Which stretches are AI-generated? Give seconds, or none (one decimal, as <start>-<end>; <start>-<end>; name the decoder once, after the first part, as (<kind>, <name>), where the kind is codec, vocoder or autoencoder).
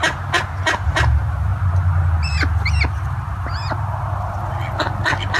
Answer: none